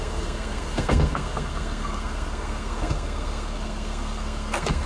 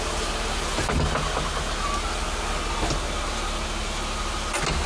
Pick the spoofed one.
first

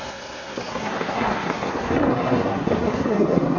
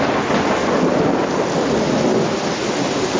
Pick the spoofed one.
first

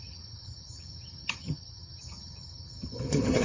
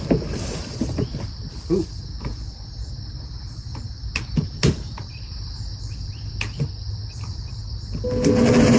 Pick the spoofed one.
first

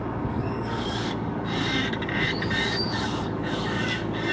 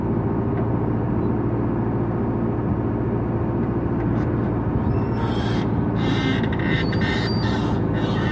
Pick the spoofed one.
first